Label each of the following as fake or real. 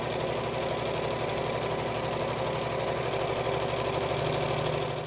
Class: real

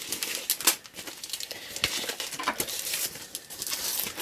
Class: real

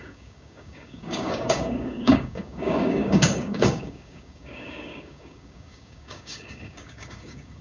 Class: fake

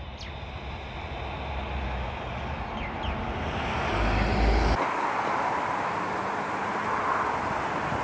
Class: real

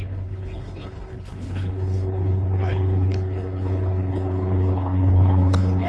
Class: fake